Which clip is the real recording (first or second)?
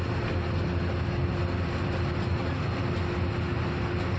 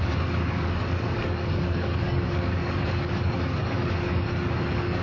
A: first